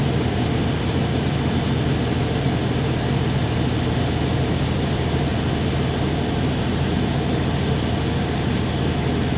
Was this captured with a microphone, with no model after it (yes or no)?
yes